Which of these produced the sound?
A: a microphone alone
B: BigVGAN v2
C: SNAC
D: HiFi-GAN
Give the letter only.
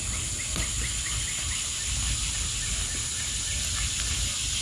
A